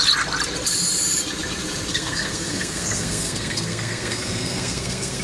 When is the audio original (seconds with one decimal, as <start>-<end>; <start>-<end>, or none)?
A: 0.0-1.9